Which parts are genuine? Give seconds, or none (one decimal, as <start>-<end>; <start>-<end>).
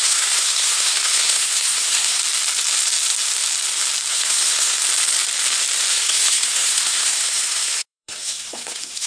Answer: 2.2-4.1; 4.8-5.9